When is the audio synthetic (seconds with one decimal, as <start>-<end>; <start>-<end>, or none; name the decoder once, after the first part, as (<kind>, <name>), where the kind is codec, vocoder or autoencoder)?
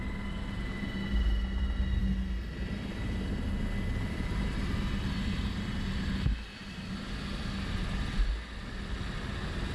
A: none